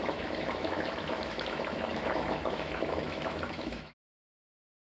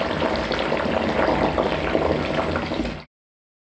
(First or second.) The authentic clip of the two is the second